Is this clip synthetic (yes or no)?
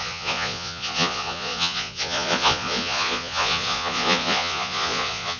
yes